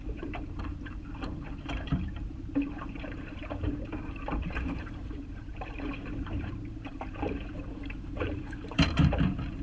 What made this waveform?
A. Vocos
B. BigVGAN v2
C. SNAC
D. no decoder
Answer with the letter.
B